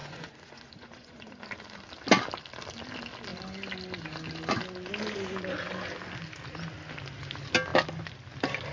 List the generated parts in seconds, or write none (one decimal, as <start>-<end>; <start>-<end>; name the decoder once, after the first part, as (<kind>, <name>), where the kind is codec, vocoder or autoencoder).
0.0-1.3 (vocoder, Vocos)